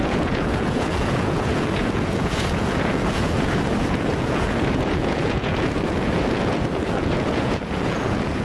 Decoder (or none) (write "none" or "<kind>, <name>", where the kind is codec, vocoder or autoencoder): vocoder, Vocos